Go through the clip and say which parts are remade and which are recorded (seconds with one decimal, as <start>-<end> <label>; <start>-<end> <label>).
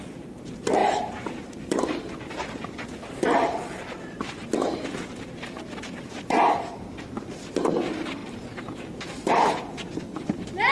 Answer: 0.0-0.8 recorded; 0.8-2.0 remade; 2.0-8.2 recorded; 8.2-8.9 remade; 8.9-10.7 recorded